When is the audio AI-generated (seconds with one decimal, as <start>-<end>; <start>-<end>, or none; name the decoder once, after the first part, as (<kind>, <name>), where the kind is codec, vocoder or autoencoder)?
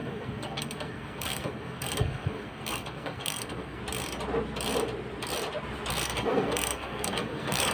0.0-3.8 (codec, SNAC); 5.9-7.7